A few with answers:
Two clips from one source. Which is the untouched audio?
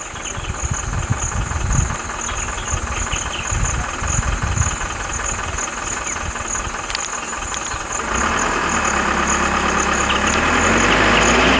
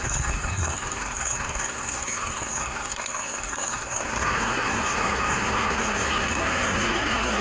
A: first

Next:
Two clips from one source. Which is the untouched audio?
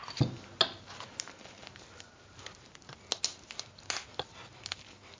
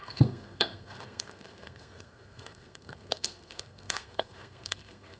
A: first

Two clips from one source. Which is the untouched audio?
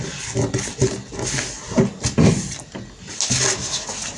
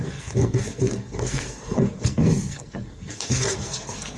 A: first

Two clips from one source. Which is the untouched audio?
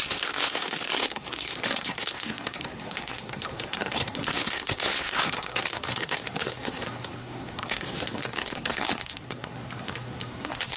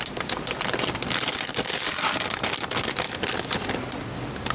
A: second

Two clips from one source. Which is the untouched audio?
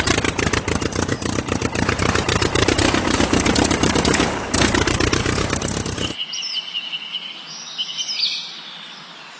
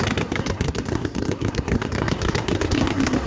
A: first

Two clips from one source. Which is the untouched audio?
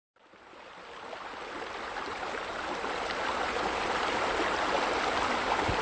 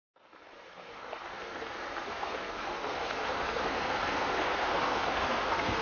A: first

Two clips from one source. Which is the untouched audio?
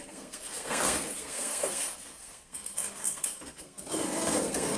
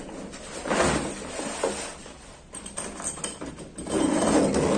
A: second